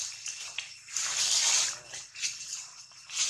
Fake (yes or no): no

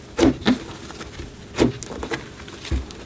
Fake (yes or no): no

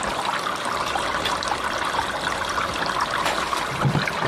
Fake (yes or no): no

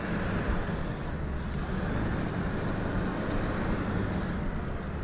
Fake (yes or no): no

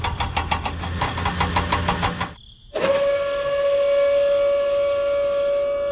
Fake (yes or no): no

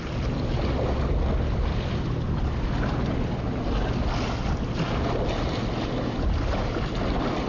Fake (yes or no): no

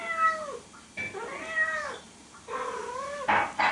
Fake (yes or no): no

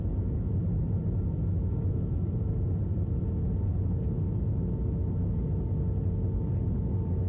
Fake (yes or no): no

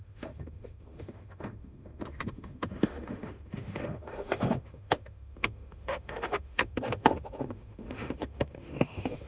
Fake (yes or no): yes